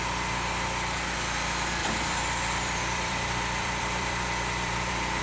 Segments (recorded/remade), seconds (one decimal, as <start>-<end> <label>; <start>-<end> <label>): 0.0-1.8 recorded; 1.8-5.2 remade